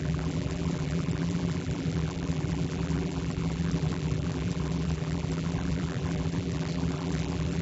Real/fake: fake